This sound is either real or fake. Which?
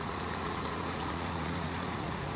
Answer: fake